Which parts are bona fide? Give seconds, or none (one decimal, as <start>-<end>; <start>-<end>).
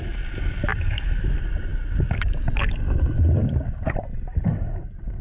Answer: 0.0-5.2